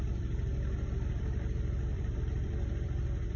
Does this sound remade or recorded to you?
remade